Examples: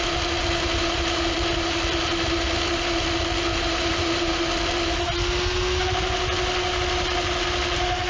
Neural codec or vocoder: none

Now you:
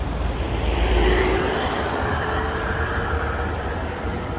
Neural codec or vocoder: vocoder, BigVGAN v2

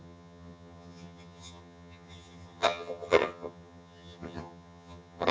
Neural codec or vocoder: vocoder, HiFi-GAN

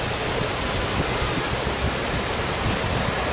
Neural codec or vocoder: none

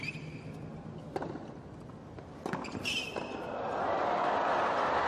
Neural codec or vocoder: none